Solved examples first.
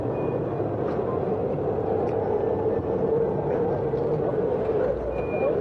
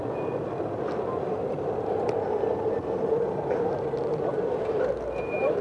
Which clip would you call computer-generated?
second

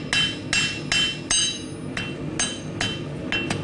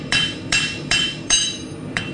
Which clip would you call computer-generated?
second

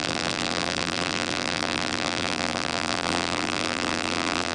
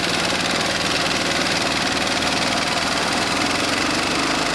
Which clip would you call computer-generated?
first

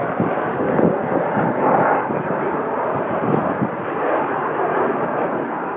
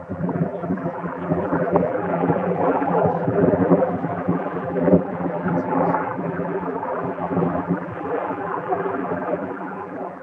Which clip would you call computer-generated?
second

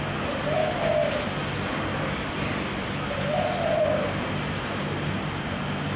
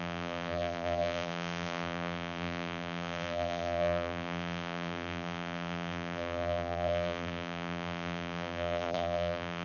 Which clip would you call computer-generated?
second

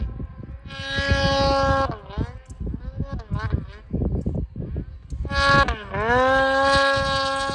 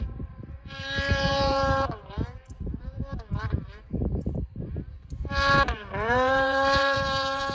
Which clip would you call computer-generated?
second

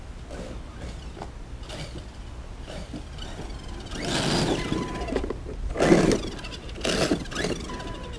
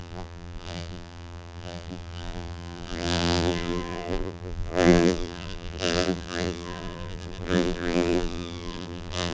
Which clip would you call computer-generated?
second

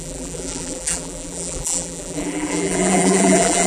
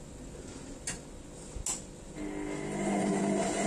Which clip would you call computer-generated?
first